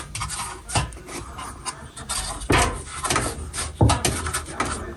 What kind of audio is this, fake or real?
real